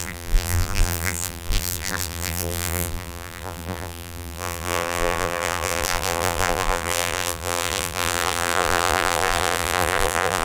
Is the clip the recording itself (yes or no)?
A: no